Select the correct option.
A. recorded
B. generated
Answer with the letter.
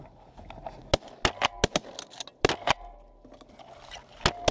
A